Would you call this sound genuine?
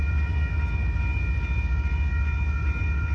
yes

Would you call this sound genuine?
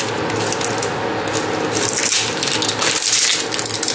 yes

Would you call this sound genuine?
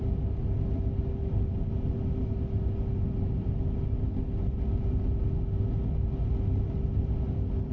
yes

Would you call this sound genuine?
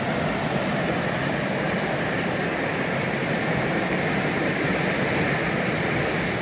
yes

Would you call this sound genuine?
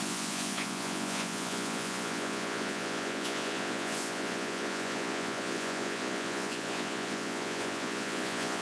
no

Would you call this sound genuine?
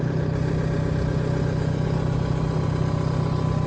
yes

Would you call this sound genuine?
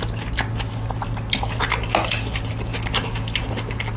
yes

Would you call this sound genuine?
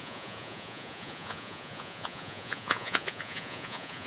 no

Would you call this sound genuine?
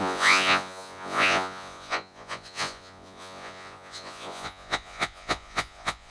no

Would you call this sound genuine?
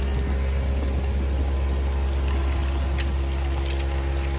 yes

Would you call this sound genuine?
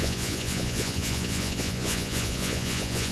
no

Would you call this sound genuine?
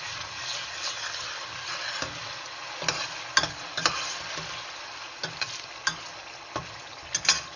yes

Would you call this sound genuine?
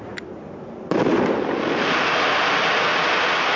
yes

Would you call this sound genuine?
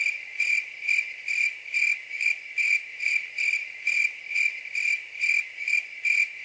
yes